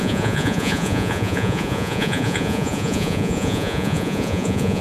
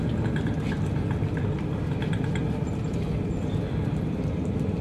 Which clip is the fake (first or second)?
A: first